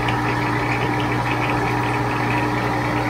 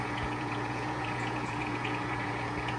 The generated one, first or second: second